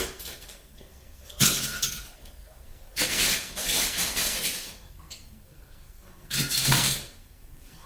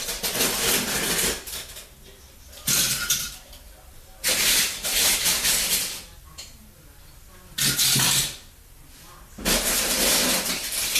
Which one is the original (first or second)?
second